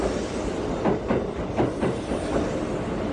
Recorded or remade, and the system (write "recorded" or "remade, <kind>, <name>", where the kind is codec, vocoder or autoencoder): recorded